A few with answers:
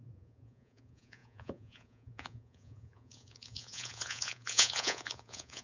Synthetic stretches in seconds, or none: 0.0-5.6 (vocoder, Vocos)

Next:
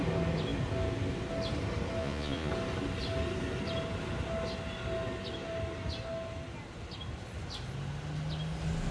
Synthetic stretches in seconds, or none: 2.0-2.5 (vocoder, Vocos)